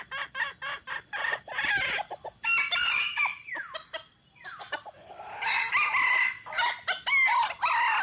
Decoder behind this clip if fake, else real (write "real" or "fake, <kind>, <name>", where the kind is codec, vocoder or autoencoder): real